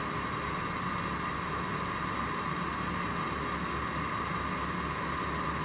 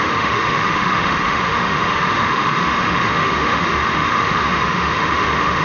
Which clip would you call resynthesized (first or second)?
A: second